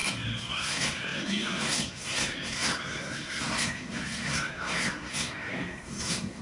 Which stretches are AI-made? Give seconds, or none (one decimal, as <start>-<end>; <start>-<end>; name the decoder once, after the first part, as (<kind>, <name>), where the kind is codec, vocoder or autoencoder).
0.5-6.4 (codec, SNAC)